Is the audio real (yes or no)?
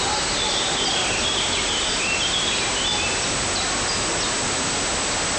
yes